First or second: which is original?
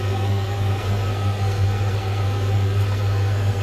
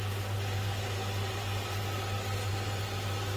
second